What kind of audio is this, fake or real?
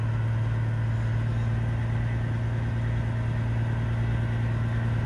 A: real